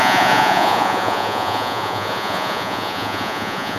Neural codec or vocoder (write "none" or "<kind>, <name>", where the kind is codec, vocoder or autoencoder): vocoder, Vocos